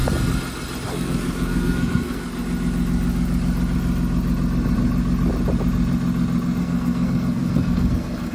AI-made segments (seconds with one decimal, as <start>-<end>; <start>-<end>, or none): 0.9-2.2; 6.6-8.3